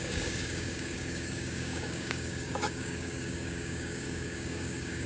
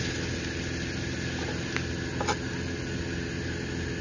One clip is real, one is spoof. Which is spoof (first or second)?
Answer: first